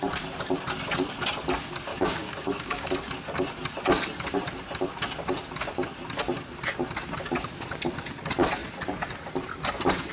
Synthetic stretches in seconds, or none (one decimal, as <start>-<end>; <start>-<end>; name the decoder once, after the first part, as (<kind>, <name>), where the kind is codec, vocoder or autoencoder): 1.9-2.9 (codec, DAC)